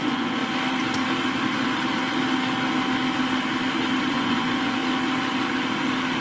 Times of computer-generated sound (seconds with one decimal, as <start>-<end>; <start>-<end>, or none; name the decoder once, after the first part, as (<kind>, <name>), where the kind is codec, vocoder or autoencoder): 0.0-0.4 (vocoder, Vocos); 4.1-4.8